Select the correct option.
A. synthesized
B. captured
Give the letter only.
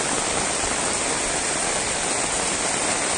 B